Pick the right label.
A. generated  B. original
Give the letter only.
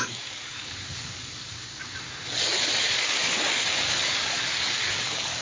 A